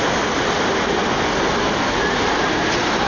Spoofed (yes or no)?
no